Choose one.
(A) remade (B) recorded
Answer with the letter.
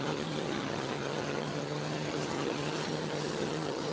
A